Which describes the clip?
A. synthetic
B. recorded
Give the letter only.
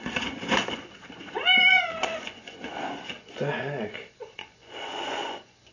A